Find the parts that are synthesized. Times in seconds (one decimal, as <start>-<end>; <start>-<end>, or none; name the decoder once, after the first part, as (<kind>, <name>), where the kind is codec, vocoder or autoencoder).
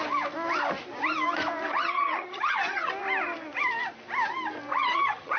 1.7-2.9 (vocoder, HiFi-GAN); 4.7-5.4